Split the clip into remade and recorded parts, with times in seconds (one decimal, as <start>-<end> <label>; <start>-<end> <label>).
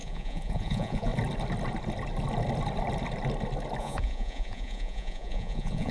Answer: 0.0-1.1 remade; 1.1-3.8 recorded; 3.8-5.9 remade